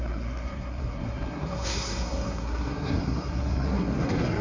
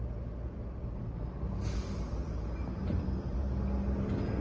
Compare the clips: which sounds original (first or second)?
second